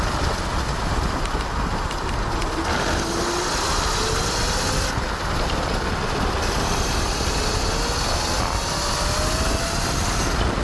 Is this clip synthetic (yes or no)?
no